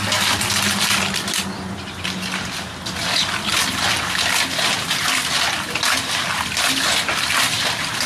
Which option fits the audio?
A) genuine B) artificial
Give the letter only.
A